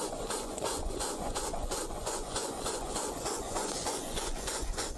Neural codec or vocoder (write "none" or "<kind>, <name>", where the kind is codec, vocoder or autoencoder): vocoder, Vocos